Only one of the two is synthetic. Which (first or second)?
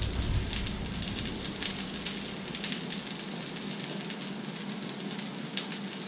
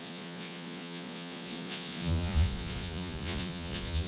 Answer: second